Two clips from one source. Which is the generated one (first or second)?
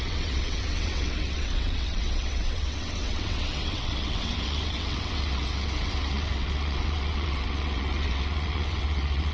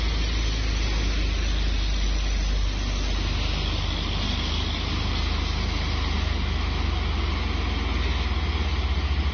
first